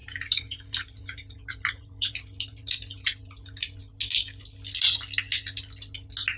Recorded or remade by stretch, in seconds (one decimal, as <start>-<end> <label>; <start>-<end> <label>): 0.0-3.8 remade; 3.8-6.4 recorded